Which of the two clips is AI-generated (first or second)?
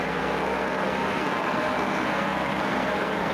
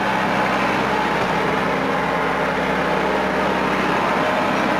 first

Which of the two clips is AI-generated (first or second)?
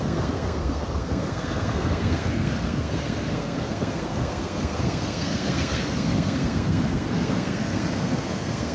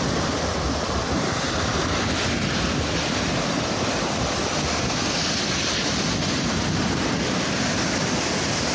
first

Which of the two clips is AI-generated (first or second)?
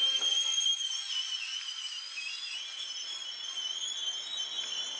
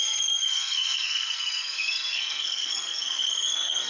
second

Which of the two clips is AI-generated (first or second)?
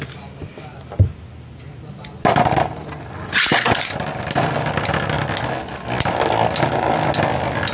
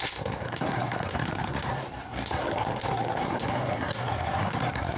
second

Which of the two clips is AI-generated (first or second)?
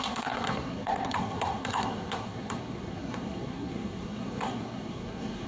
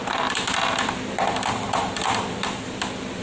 first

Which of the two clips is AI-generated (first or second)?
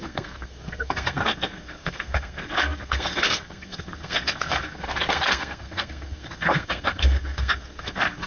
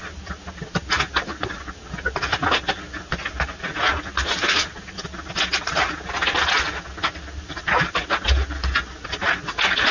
first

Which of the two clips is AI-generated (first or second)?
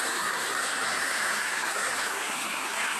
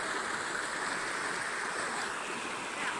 first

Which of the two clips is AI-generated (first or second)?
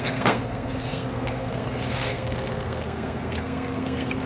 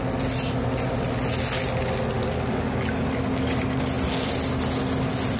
first